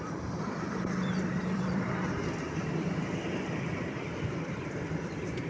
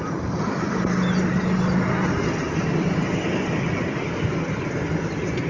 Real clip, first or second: second